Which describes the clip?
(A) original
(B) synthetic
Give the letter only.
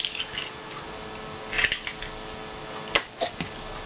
A